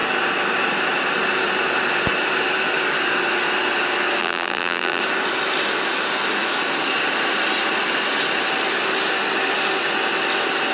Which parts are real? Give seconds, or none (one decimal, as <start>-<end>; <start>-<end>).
0.0-4.2; 5.0-10.7